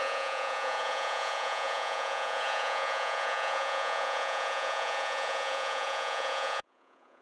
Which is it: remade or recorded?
remade